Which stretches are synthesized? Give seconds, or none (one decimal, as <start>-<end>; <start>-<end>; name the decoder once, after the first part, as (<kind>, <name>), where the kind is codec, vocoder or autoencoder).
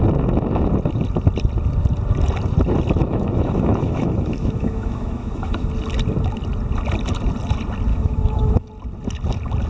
3.0-5.7 (autoencoder, DAC-VAE); 7.9-8.7